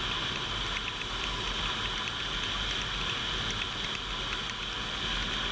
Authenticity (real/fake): real